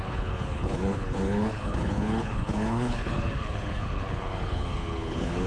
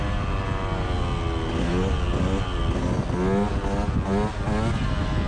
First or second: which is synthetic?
first